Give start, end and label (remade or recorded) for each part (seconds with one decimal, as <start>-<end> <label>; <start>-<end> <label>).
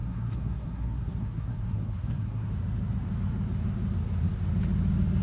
0.0-2.5 remade; 2.5-5.2 recorded